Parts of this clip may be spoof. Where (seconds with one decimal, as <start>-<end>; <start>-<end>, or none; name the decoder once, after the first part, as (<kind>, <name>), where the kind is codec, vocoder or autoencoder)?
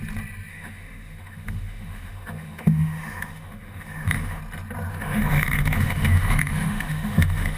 0.5-4.4 (autoencoder, DAC-VAE); 4.9-7.6